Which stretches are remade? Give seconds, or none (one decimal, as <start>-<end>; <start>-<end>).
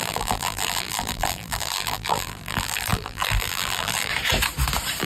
0.0-4.1